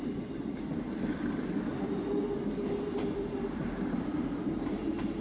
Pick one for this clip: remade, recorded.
recorded